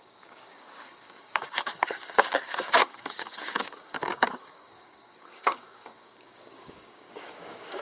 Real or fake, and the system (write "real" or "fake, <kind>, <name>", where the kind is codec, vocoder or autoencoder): fake, codec, DAC